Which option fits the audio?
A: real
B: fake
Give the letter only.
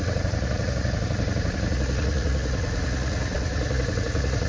B